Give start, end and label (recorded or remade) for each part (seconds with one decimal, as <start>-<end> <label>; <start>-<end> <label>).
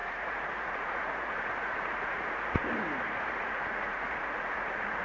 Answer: 0.0-2.7 remade; 2.7-3.3 recorded; 3.3-5.0 remade